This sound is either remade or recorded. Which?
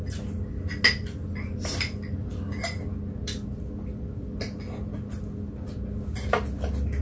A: recorded